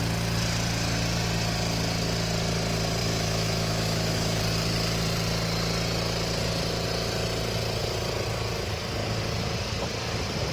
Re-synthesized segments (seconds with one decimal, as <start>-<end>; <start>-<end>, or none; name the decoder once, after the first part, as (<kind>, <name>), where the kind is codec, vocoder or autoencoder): 3.0-4.4 (autoencoder, DAC-VAE)